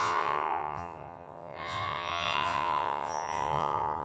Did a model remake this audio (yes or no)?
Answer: yes